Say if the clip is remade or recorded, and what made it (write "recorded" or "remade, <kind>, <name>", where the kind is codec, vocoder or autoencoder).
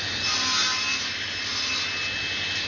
recorded